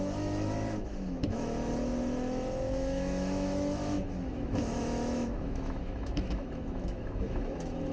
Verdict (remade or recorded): remade